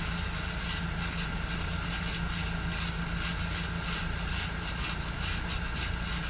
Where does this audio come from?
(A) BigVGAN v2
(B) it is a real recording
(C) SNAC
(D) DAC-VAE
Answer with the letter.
B